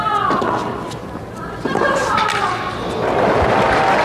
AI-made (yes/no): no